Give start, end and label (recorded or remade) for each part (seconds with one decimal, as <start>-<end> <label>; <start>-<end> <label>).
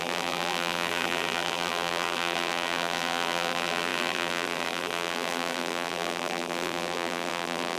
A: 0.0-7.8 remade